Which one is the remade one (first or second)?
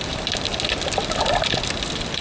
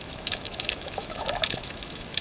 second